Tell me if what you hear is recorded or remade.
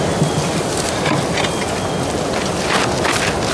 recorded